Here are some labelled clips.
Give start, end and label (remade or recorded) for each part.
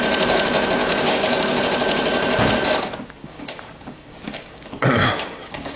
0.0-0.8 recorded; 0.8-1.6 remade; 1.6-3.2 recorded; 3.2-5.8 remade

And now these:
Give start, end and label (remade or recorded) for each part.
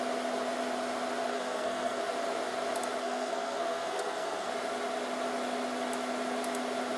0.0-1.3 recorded; 1.3-2.0 remade; 2.0-3.0 recorded; 3.0-4.5 remade; 4.5-7.0 recorded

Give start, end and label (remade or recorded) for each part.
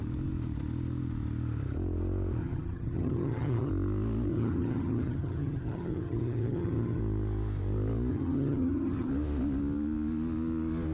0.0-2.4 recorded; 2.4-3.7 remade; 3.7-4.3 recorded; 4.3-7.0 remade; 7.0-8.1 recorded; 8.1-9.1 remade; 9.1-10.9 recorded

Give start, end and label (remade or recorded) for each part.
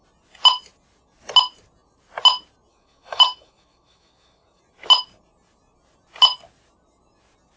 0.0-2.7 recorded; 2.7-4.6 remade; 4.6-7.6 recorded